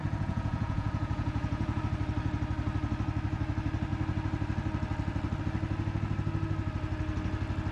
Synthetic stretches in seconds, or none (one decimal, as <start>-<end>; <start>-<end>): 0.0-1.8